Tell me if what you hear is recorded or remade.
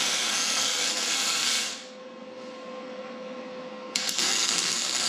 remade